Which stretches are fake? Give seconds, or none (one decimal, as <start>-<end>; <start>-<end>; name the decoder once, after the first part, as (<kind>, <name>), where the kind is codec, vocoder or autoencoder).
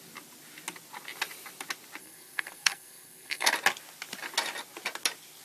2.0-3.5 (codec, SNAC)